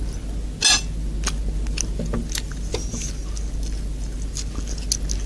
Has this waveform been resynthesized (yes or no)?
no